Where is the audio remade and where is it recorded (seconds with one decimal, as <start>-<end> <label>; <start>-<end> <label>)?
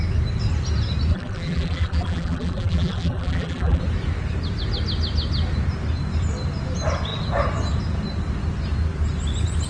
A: 0.0-1.1 recorded; 1.1-3.8 remade; 3.8-9.7 recorded